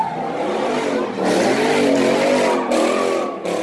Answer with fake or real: real